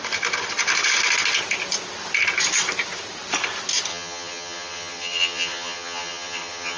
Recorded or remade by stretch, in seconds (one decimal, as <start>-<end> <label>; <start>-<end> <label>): 0.0-3.9 recorded; 3.9-6.8 remade